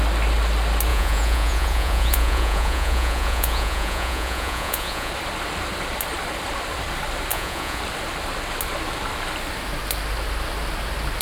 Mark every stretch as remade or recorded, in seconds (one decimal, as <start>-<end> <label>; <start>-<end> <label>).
0.0-0.9 recorded; 0.9-5.1 remade; 5.1-7.3 recorded; 7.3-7.8 remade; 7.8-11.2 recorded